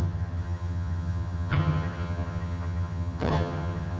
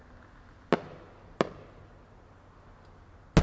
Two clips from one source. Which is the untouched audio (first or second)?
second